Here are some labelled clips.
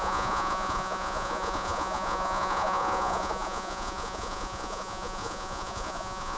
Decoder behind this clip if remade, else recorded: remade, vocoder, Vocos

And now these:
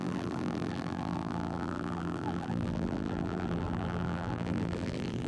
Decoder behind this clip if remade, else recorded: remade, vocoder, BigVGAN v2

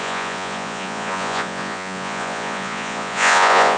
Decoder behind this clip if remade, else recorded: remade, vocoder, Vocos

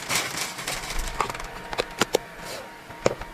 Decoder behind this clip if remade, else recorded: recorded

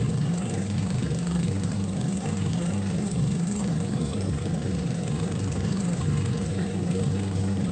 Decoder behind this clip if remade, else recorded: remade, codec, SNAC